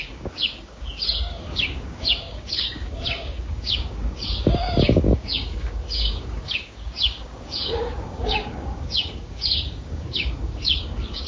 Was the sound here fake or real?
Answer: fake